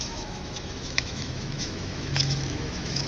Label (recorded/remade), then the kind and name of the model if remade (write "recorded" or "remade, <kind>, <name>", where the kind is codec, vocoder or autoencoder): remade, autoencoder, DAC-VAE